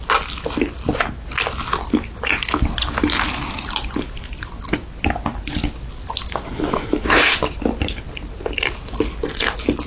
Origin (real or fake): real